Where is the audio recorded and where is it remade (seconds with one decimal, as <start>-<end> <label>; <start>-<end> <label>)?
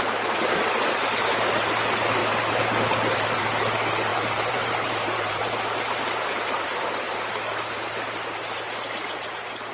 0.0-2.2 recorded; 2.2-3.4 remade; 3.4-4.1 recorded; 4.1-5.5 remade; 5.5-9.7 recorded